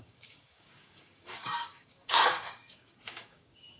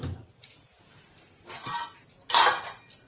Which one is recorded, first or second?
second